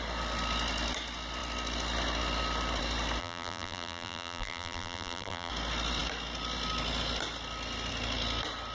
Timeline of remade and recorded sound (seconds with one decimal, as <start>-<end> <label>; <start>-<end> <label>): 0.0-3.2 recorded; 3.2-5.5 remade; 5.5-8.7 recorded